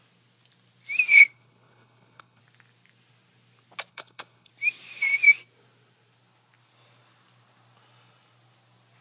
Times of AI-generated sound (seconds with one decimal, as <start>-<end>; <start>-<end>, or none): 1.1-2.4; 3.9-4.5